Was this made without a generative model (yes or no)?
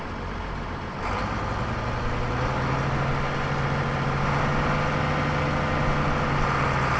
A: yes